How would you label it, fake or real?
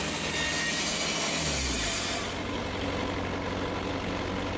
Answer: real